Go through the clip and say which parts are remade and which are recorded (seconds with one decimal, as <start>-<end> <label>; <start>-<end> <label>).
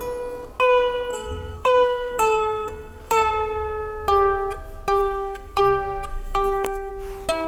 0.0-1.1 recorded; 1.1-3.3 remade; 3.3-5.0 recorded; 5.0-5.6 remade; 5.6-6.1 recorded; 6.1-6.9 remade; 6.9-7.5 recorded